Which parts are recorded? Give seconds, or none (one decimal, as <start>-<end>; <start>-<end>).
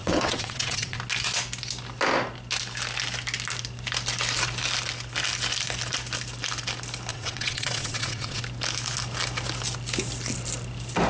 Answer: 1.0-7.1; 8.4-11.1